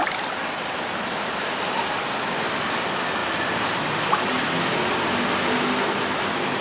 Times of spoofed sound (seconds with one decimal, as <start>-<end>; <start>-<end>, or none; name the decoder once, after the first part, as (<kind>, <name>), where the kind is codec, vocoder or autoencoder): none